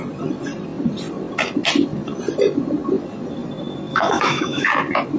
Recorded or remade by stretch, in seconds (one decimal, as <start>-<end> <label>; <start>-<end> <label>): 0.0-3.9 recorded; 3.9-4.7 remade; 4.7-5.2 recorded